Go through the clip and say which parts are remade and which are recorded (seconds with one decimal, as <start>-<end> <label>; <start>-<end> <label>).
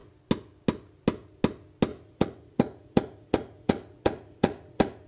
0.0-1.9 recorded; 1.9-5.1 remade